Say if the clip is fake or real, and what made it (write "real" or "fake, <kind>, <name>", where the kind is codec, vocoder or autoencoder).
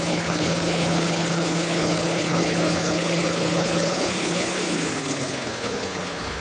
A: fake, codec, HILCodec